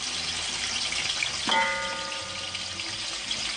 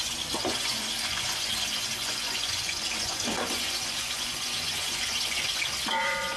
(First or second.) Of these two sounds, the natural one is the first